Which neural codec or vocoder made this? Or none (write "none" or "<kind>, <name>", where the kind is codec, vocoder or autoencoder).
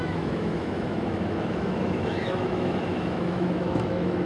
autoencoder, DAC-VAE